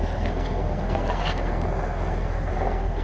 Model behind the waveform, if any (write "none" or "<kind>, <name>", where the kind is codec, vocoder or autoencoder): codec, SNAC